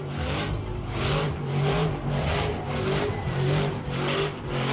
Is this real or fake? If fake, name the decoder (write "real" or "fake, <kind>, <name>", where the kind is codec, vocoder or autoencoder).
fake, vocoder, BigVGAN v2